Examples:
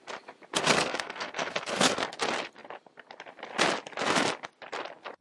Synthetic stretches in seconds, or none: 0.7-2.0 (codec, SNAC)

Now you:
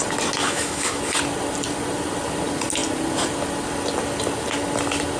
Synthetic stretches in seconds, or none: 0.4-1.0 (autoencoder, DAC-VAE)

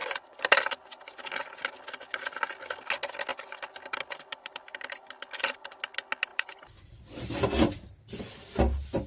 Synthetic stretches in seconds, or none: 0.0-1.7 (vocoder, BigVGAN v2); 3.3-5.8; 6.3-8.0

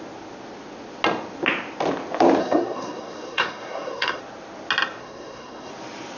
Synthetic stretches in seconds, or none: 2.4-4.2 (codec, SNAC); 5.0-5.7

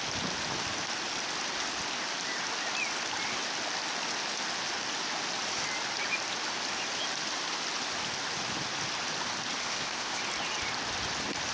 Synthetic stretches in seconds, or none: 9.6-10.2 (codec, ZipCodec)